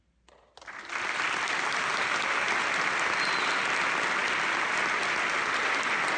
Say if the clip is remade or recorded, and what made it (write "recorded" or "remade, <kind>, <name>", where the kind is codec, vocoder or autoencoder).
recorded